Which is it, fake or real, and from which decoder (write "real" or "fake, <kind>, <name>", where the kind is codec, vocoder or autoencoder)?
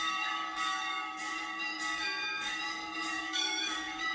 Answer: fake, codec, DAC